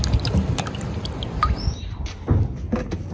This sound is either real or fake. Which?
real